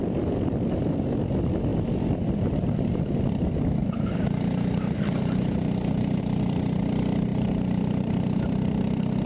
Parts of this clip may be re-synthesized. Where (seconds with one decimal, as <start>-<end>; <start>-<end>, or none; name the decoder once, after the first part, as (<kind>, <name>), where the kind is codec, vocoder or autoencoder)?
1.7-2.9 (vocoder, BigVGAN v2); 3.8-6.2; 7.3-8.8